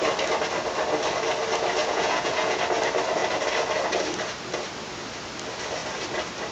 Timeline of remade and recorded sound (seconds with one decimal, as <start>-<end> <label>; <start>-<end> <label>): 0.0-1.8 recorded; 1.8-2.6 remade; 2.6-6.5 recorded